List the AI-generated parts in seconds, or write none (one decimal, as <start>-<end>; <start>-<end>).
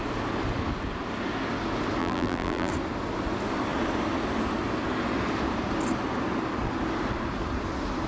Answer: 2.0-2.7